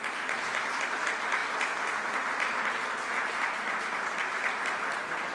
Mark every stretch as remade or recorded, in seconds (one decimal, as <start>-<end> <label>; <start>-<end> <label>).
0.0-5.3 recorded